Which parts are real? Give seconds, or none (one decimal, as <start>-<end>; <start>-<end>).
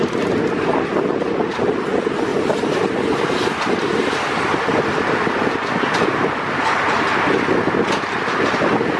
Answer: 0.0-2.3; 5.5-9.0